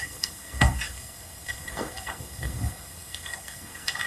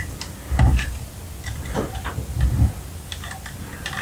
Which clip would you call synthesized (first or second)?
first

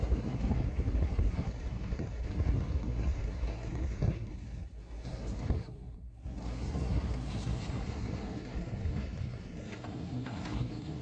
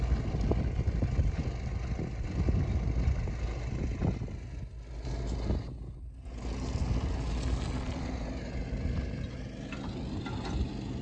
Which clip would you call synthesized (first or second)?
first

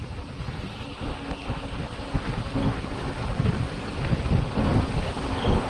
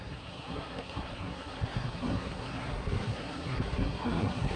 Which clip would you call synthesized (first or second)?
second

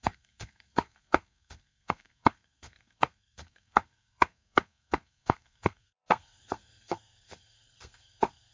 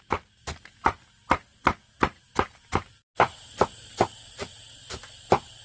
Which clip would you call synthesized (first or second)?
first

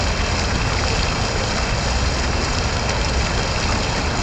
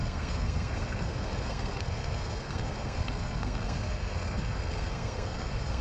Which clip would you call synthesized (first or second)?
second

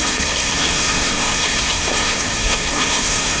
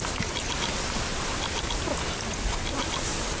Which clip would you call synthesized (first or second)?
first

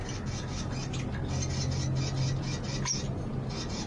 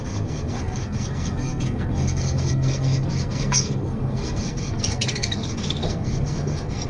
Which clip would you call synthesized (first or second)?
second